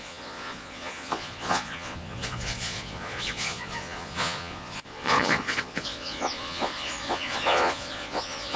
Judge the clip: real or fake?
fake